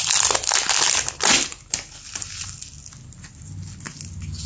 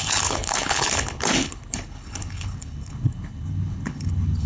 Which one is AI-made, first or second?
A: second